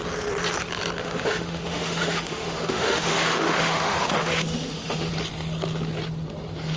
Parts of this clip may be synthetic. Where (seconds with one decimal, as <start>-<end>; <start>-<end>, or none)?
1.0-5.1